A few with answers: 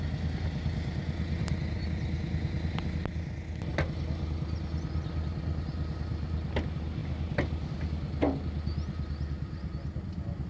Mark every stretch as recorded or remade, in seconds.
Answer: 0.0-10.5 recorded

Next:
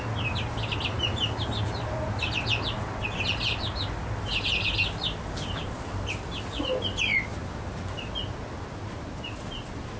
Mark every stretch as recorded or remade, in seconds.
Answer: 0.0-10.0 recorded